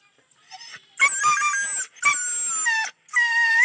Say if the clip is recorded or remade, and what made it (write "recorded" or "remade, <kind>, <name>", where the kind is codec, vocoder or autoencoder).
recorded